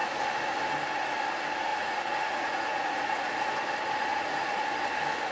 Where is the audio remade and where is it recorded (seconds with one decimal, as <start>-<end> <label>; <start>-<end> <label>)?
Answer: 0.0-1.7 recorded; 1.7-3.2 remade; 3.2-4.1 recorded; 4.1-4.6 remade; 4.6-5.3 recorded